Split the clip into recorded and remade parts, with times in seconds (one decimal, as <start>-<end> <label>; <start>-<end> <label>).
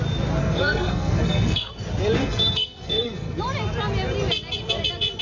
0.0-0.4 recorded; 0.4-1.7 remade; 1.7-2.2 recorded; 2.2-3.4 remade; 3.4-5.2 recorded